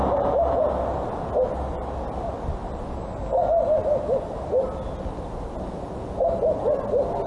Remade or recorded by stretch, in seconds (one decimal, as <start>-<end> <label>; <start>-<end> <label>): 0.0-7.3 recorded